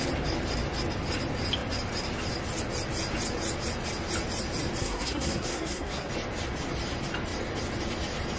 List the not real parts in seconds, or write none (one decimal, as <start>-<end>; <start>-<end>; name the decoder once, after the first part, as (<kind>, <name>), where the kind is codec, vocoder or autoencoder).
4.8-6.1 (codec, SNAC)